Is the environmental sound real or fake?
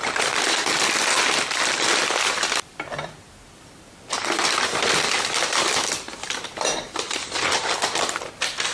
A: fake